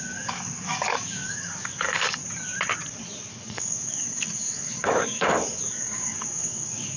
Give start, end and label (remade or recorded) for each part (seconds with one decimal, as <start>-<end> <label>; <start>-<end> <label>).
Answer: 0.0-2.2 remade; 2.2-3.3 recorded; 3.3-7.0 remade